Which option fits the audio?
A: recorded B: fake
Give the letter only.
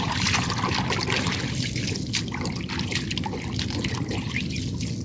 A